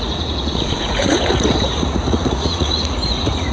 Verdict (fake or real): fake